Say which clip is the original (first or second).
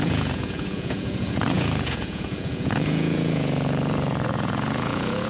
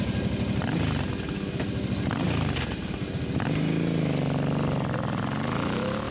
second